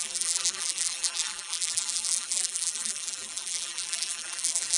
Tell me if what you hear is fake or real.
fake